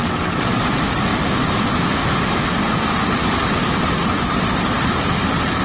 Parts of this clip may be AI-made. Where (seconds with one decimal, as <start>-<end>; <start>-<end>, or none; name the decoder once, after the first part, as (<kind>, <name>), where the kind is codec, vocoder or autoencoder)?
0.0-0.6 (vocoder, WaveNeXt)